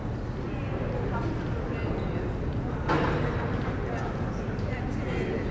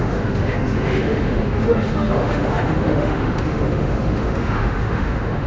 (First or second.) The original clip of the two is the first